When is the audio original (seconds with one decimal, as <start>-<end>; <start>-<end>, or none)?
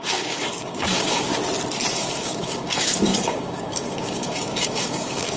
1.3-1.9